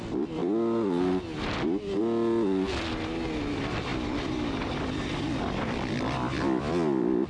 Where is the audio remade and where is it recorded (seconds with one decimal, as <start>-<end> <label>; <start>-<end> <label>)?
0.0-3.9 recorded; 3.9-6.6 remade; 6.6-7.3 recorded